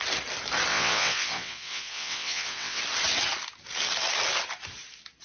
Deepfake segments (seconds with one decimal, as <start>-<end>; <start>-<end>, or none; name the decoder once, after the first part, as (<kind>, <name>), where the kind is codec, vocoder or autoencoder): 0.7-2.8 (vocoder, WaveNeXt)